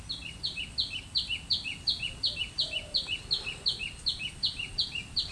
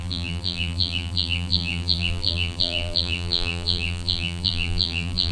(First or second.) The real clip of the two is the first